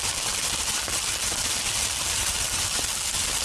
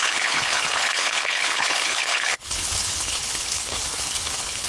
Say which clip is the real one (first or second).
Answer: first